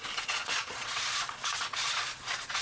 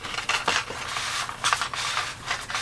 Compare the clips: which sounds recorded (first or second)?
second